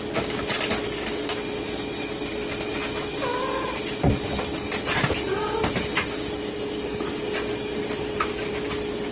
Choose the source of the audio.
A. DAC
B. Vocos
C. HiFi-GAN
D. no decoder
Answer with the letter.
D